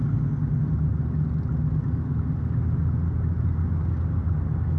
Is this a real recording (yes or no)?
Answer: yes